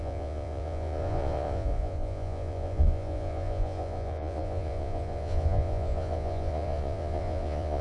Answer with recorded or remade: remade